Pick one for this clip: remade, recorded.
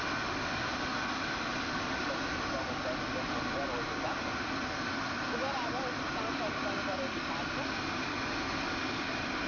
recorded